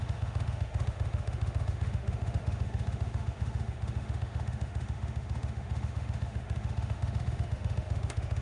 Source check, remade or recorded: remade